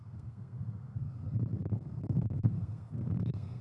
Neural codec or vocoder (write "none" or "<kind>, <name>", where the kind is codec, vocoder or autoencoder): codec, SNAC